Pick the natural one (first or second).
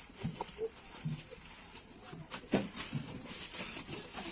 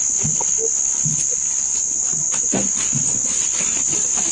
second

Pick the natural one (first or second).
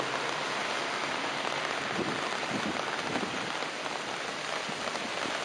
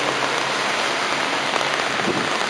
second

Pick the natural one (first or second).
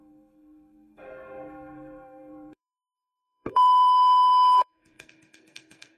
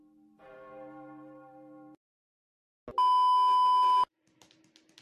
second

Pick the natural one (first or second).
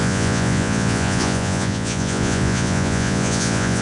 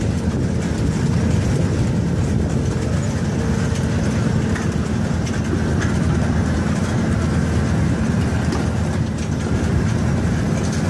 second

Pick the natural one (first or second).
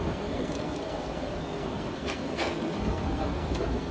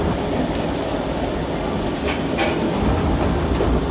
second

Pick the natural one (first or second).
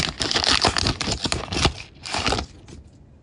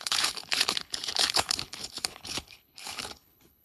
first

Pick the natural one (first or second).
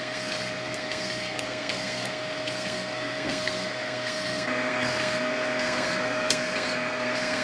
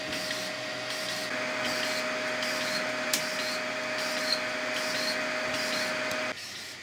second